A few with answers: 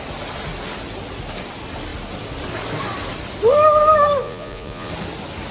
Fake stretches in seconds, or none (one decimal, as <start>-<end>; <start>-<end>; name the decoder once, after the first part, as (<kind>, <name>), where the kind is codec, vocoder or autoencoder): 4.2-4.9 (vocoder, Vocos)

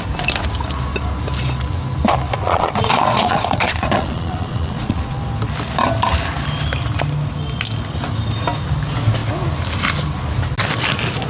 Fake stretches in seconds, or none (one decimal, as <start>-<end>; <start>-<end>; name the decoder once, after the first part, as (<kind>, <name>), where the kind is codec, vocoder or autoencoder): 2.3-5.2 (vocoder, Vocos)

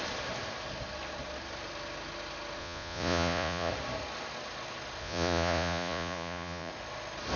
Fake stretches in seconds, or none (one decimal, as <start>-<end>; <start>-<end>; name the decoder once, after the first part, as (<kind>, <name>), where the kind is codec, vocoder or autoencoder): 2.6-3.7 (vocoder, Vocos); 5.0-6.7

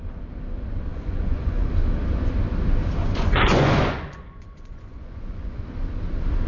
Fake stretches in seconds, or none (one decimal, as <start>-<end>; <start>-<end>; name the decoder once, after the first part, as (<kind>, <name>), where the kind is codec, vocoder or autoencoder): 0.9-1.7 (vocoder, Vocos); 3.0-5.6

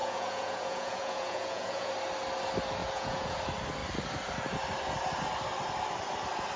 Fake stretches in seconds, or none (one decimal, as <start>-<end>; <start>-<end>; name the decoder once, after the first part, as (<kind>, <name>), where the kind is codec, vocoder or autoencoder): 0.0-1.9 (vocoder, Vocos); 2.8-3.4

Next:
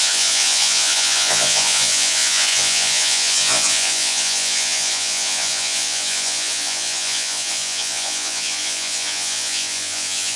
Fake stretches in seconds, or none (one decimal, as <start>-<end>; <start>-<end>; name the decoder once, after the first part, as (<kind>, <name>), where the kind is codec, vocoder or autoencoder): 0.0-10.4 (vocoder, Vocos)

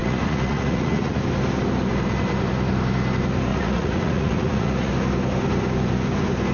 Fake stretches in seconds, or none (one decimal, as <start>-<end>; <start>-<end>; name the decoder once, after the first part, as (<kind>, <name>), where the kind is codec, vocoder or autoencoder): 0.0-1.2 (vocoder, Vocos); 3.5-4.9

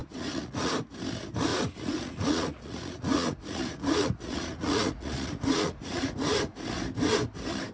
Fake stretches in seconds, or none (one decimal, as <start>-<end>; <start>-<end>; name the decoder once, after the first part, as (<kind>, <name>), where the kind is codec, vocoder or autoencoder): 0.0-0.7 (vocoder, Vocos); 1.5-6.1